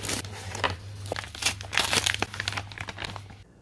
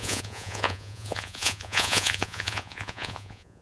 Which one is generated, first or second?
second